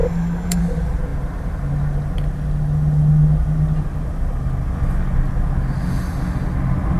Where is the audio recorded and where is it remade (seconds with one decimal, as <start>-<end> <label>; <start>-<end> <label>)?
0.0-0.6 remade; 0.6-7.0 recorded